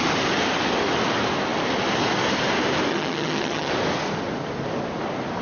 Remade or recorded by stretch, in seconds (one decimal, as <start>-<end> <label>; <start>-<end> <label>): 0.0-2.9 recorded; 2.9-3.7 remade; 3.7-5.4 recorded